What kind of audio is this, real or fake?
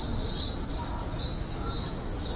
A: real